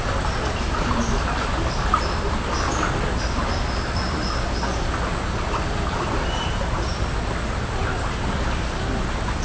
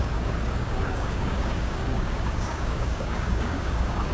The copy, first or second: second